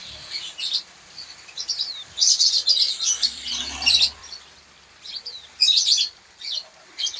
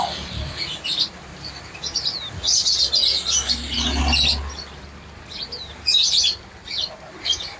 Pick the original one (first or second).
second